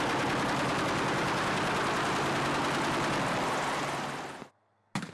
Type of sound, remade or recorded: recorded